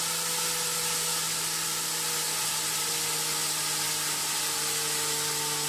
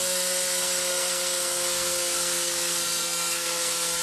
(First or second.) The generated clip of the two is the second